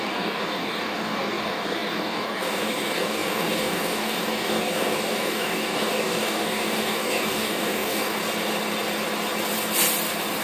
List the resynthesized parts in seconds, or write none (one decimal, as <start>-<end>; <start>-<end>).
0.0-8.2